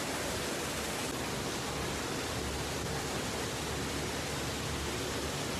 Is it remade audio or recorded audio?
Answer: recorded